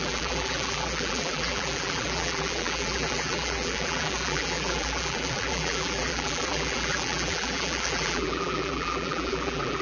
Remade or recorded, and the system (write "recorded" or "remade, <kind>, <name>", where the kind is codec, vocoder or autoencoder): remade, vocoder, BigVGAN v2